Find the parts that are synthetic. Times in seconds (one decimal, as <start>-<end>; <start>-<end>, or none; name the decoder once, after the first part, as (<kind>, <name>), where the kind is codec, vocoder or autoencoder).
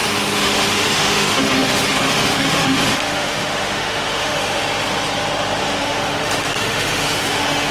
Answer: 0.0-4.6 (autoencoder, DAC-VAE); 5.6-7.7